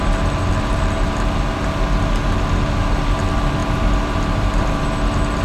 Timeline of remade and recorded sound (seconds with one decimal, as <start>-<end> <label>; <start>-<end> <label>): 0.0-3.6 recorded; 3.6-4.8 remade; 4.8-5.4 recorded